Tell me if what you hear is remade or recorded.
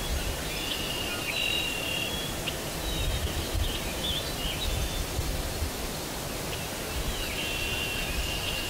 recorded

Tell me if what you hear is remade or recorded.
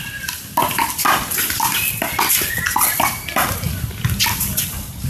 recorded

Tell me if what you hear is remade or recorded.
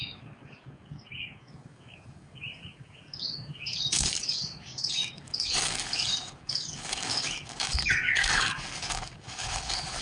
remade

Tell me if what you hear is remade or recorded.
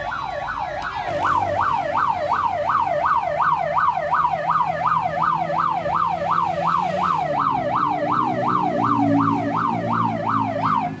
recorded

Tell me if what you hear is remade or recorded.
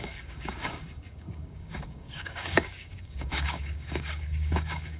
remade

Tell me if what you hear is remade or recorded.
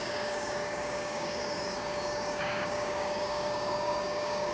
remade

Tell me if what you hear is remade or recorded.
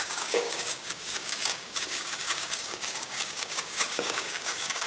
remade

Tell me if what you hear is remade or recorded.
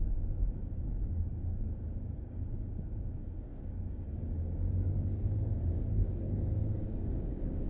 remade